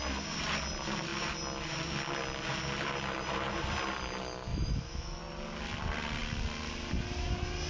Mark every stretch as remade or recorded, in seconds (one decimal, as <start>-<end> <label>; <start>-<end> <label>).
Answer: 0.0-4.5 recorded; 4.5-5.2 remade; 5.2-7.7 recorded